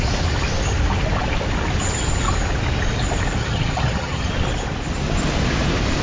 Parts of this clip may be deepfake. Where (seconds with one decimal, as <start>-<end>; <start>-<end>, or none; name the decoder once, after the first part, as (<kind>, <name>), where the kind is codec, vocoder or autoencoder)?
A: 3.4-4.3 (vocoder, HiFi-GAN)